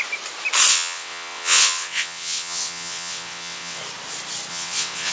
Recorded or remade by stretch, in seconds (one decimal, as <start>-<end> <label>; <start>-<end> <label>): 0.0-0.7 recorded; 0.7-3.8 remade; 3.8-4.5 recorded; 4.5-5.1 remade